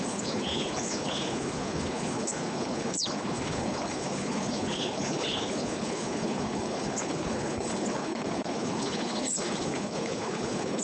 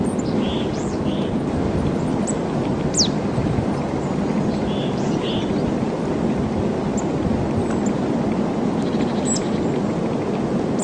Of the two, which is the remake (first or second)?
first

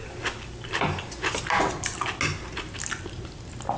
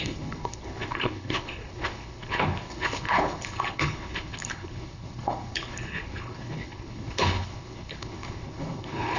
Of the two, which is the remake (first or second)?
second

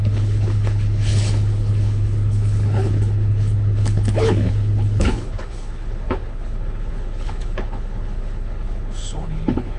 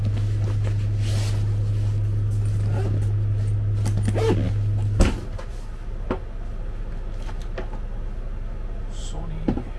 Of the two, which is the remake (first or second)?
first